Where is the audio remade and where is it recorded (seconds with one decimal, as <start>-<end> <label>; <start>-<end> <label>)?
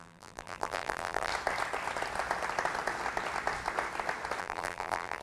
0.0-1.3 remade; 1.3-4.4 recorded; 4.4-5.2 remade